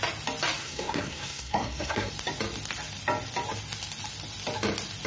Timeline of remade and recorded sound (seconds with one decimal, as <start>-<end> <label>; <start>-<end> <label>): 0.0-0.6 recorded; 0.6-2.1 remade; 2.1-5.1 recorded